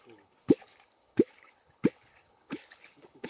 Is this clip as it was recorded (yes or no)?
no